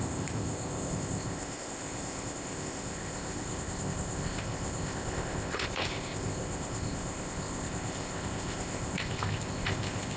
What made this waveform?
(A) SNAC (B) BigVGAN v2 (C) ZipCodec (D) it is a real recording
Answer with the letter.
C